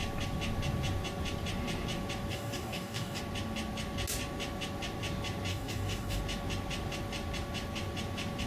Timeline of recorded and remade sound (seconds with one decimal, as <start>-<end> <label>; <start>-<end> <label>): 0.0-2.3 recorded; 2.3-3.2 remade; 3.2-5.5 recorded; 5.5-6.2 remade; 6.2-8.5 recorded